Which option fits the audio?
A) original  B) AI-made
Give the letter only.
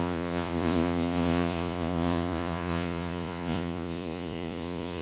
B